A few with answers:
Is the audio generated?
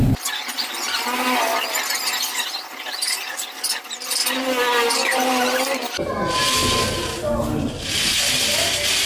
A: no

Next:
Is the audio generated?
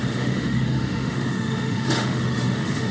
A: yes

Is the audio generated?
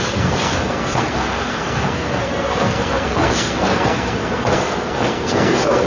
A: yes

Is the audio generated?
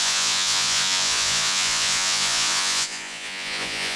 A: yes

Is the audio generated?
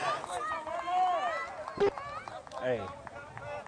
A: no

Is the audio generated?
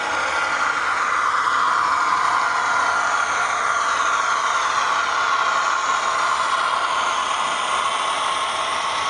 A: no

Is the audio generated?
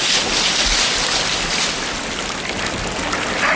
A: no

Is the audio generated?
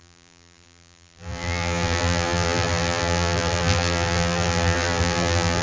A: yes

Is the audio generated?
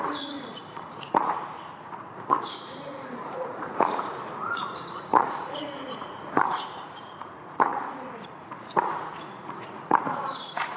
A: yes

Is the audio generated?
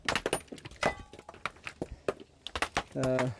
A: no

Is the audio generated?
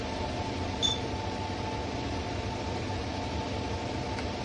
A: no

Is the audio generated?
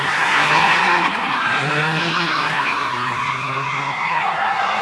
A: yes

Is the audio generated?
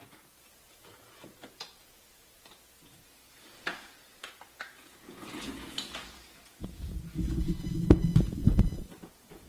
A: yes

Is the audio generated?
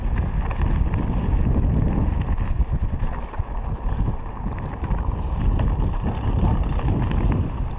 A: no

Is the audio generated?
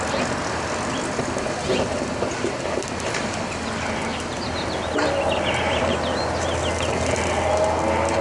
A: no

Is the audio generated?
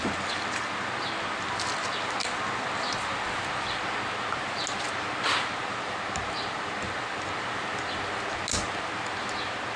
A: no